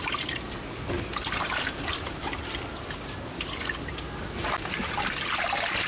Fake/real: real